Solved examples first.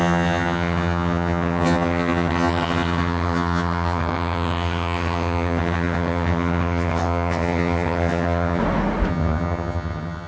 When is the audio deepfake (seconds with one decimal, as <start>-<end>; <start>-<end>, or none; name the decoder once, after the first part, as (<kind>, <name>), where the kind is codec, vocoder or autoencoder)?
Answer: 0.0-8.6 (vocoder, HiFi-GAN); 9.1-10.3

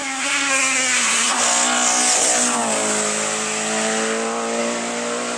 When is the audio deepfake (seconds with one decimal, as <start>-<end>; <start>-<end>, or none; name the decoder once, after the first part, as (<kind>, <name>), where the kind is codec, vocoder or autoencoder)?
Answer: 0.0-1.4 (codec, SNAC)

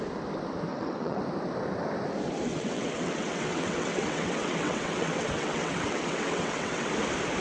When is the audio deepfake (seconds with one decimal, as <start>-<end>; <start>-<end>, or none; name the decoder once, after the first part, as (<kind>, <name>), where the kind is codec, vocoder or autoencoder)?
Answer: 0.7-1.2 (vocoder, WaveNeXt); 2.5-6.9

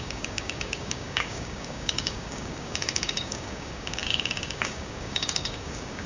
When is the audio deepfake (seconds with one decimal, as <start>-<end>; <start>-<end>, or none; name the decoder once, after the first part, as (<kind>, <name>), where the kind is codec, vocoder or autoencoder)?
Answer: 0.0-6.1 (codec, DAC)

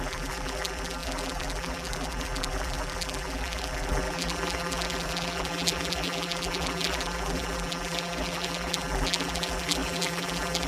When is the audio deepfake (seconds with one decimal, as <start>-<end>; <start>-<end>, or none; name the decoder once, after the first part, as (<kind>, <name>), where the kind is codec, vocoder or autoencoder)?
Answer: 0.0-10.7 (vocoder, BigVGAN v2)